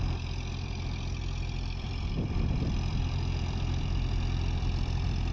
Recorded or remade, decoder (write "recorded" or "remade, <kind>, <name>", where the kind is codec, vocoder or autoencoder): remade, vocoder, BigVGAN v2